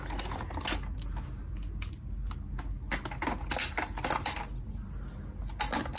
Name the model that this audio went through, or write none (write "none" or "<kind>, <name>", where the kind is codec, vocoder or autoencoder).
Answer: none